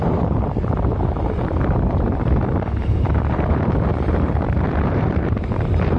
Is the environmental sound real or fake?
fake